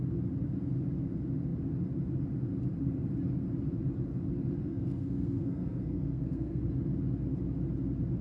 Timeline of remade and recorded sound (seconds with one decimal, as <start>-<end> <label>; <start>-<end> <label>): 0.0-4.6 recorded; 4.6-6.6 remade; 6.6-8.2 recorded